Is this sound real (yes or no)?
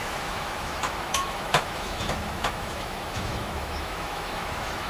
no